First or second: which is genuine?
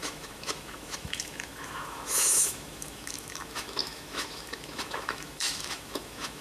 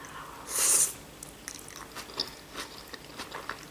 second